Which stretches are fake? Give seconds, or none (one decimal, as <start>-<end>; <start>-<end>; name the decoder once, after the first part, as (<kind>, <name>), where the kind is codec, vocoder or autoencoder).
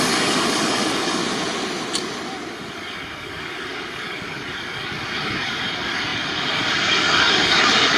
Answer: 0.0-1.2 (codec, DAC); 2.5-8.0